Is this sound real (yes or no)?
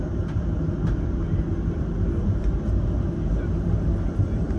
yes